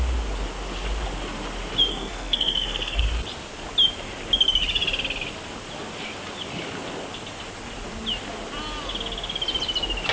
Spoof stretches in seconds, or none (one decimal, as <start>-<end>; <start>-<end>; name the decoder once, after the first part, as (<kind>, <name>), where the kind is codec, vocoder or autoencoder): 1.9-3.0 (codec, SNAC)